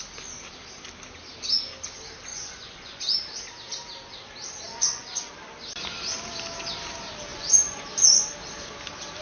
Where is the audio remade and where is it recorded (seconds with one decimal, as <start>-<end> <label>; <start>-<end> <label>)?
0.0-2.3 recorded; 2.3-3.0 remade; 3.0-4.7 recorded; 4.7-5.3 remade; 5.3-7.3 recorded; 7.3-7.8 remade; 7.8-9.2 recorded